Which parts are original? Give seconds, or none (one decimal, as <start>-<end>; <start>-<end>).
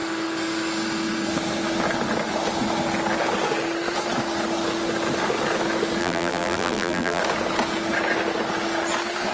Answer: 0.0-6.0; 7.2-9.3